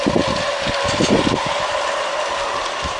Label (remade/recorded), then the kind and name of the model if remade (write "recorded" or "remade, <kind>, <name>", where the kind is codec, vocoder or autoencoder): recorded